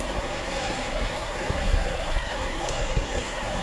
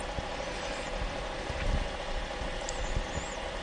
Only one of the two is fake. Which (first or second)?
first